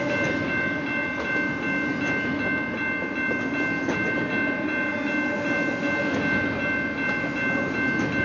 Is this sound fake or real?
real